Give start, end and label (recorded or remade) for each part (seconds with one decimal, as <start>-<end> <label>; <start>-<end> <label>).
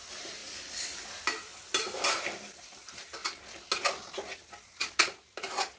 0.0-0.4 remade; 0.4-1.1 recorded; 1.1-1.5 remade; 1.5-2.4 recorded; 2.4-3.2 remade; 3.2-4.9 recorded; 4.9-5.8 remade